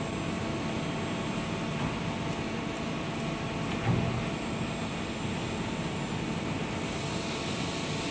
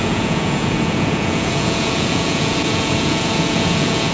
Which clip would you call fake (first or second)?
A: second